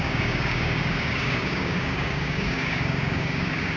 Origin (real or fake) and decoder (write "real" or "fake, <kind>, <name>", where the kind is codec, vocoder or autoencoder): fake, codec, DAC